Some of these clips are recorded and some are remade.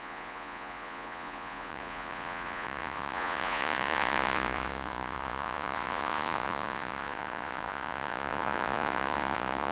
remade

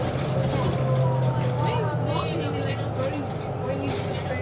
recorded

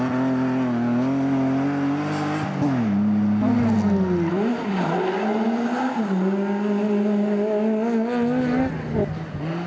recorded